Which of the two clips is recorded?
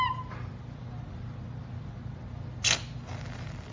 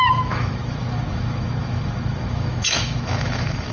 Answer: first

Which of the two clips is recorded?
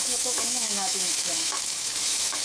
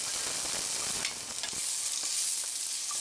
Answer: second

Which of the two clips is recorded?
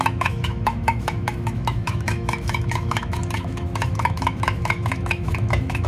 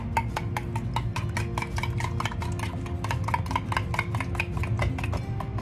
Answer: second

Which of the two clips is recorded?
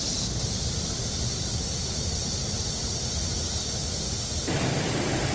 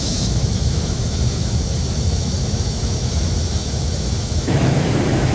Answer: first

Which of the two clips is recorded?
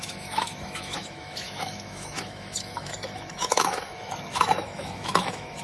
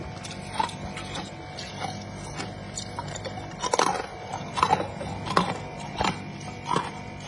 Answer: second